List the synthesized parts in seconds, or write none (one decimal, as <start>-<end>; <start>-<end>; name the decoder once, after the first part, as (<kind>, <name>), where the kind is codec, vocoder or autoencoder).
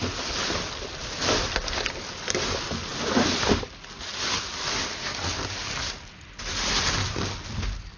none